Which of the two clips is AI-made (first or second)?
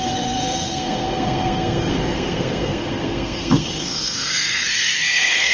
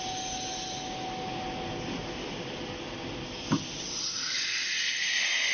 first